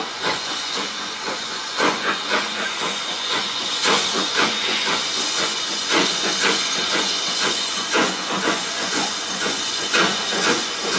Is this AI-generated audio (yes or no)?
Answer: yes